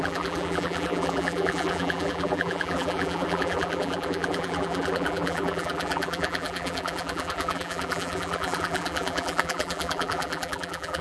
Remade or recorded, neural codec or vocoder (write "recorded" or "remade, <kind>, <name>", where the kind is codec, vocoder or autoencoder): remade, vocoder, BigVGAN v2